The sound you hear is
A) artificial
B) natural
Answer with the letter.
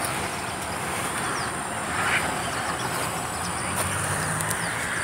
B